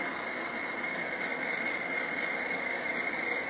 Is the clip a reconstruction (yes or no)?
no